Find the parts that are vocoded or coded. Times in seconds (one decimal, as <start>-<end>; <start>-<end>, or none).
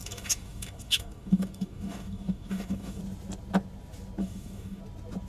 0.0-3.0; 4.2-4.8